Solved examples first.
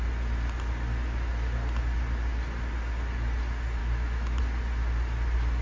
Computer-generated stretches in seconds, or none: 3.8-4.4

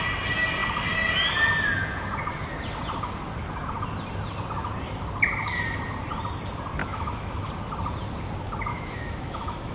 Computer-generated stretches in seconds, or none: 6.8-7.5; 8.7-9.7